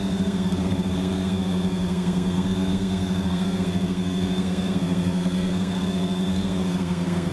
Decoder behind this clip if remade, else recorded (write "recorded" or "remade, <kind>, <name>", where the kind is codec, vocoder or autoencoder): remade, codec, SNAC